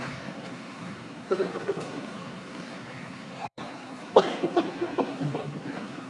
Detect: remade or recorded remade